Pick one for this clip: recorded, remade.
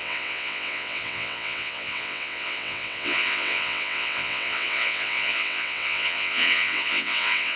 remade